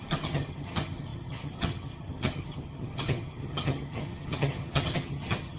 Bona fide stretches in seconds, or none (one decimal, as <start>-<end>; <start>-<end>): none